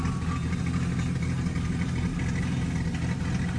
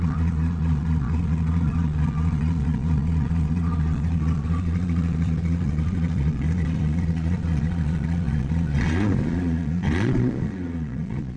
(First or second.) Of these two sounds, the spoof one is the second